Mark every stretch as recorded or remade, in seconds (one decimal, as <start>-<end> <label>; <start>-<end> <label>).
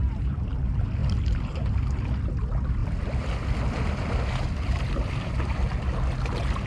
0.0-1.0 recorded; 1.0-1.7 remade; 1.7-2.8 recorded; 2.8-5.4 remade; 5.4-6.7 recorded